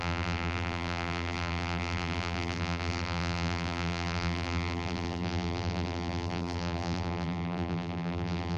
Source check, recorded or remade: remade